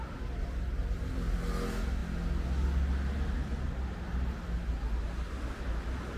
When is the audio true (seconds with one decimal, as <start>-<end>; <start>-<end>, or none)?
0.0-6.2